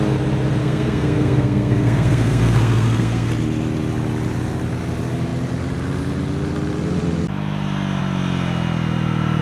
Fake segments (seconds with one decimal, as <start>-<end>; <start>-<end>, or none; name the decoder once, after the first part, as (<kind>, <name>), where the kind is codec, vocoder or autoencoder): 0.6-3.3 (codec, SNAC)